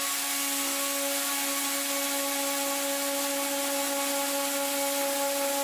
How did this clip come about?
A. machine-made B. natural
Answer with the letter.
B